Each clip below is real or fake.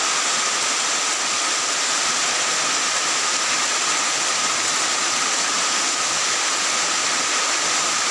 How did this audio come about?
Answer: real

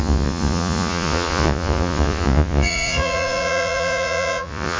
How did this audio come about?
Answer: fake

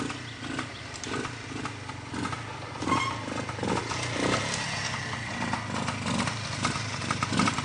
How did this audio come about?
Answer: real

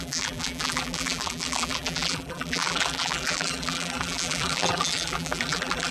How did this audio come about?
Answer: fake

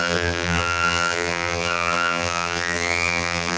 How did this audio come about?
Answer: fake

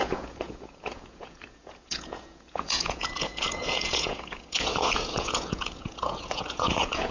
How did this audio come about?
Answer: fake